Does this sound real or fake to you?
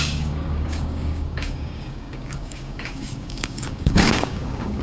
fake